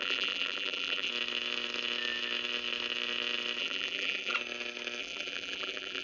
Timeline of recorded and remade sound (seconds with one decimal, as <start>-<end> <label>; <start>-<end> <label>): 0.0-1.1 remade; 1.1-3.6 recorded; 3.6-4.3 remade; 4.3-5.0 recorded; 5.0-6.0 remade